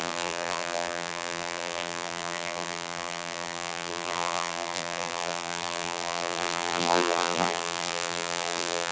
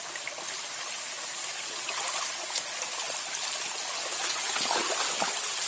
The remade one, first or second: first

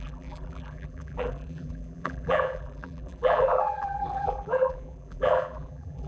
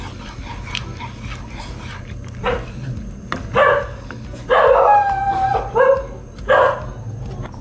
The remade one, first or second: first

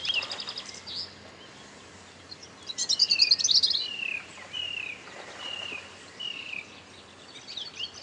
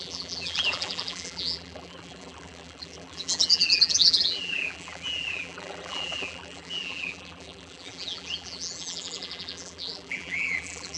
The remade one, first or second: second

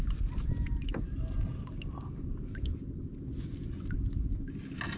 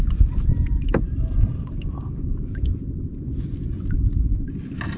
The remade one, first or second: second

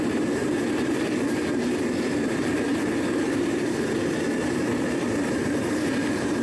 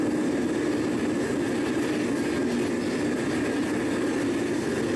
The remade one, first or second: first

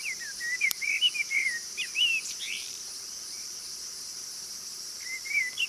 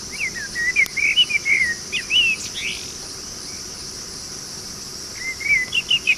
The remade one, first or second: first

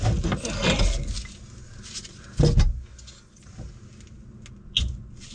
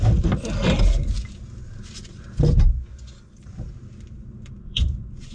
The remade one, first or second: second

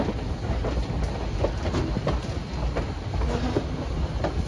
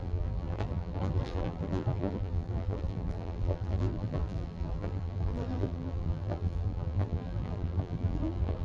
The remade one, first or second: second